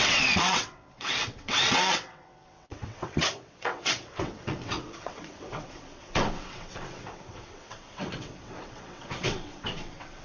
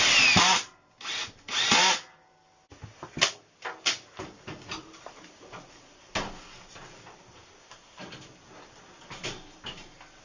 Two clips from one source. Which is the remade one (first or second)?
first